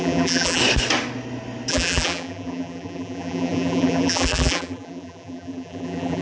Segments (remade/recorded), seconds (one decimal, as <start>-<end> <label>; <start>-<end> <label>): 0.0-0.6 remade; 0.6-1.7 recorded; 1.7-6.2 remade